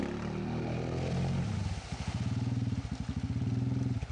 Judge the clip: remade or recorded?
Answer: recorded